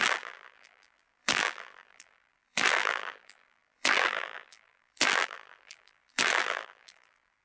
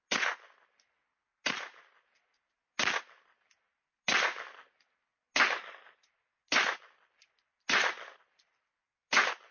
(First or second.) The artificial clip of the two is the first